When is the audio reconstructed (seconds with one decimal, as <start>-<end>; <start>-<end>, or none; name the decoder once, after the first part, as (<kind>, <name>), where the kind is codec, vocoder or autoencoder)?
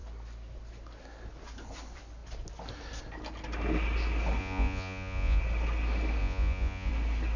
4.4-5.4 (vocoder, Vocos); 6.2-6.9